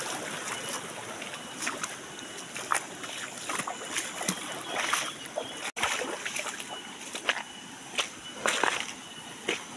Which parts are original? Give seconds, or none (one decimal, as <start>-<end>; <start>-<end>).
0.0-9.8